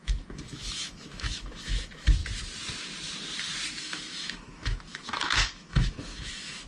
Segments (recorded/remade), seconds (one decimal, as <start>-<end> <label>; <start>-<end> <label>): 0.0-2.2 remade; 2.2-3.8 recorded; 3.8-6.7 remade